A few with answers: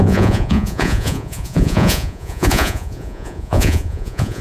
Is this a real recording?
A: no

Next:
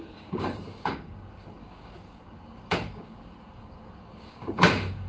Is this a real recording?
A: no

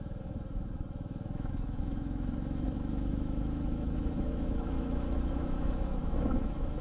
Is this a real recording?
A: no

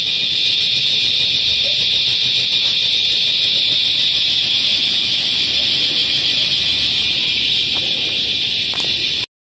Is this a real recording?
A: yes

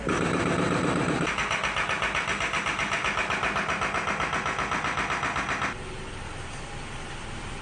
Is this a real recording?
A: yes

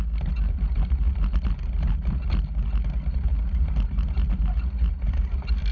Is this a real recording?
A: yes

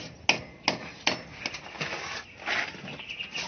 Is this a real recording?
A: yes